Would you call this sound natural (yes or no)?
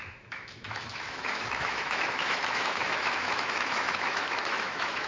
no